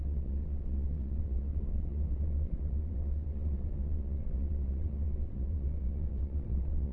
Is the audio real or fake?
fake